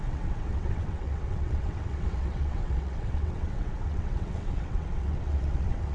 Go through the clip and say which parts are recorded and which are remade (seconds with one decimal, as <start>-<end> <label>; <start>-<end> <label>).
0.0-5.9 remade

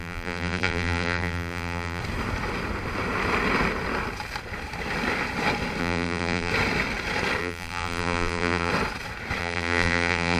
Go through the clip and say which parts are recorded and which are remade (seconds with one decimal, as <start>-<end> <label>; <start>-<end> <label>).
0.0-2.0 remade; 2.0-5.8 recorded; 5.8-6.5 remade; 6.5-7.4 recorded; 7.4-8.7 remade; 8.7-9.4 recorded; 9.4-10.4 remade